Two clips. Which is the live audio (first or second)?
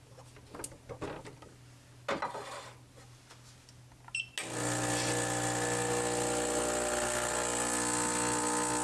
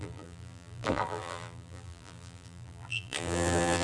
first